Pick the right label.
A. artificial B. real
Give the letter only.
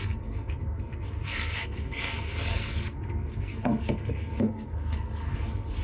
A